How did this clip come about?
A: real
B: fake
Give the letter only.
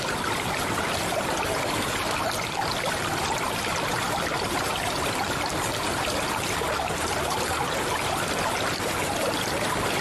A